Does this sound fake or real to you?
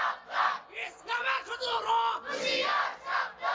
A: real